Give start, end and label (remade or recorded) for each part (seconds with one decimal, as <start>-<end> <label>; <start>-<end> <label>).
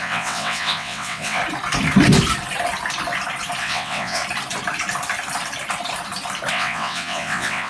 0.0-1.4 remade; 1.4-3.6 recorded; 3.6-4.2 remade; 4.2-6.5 recorded; 6.5-7.7 remade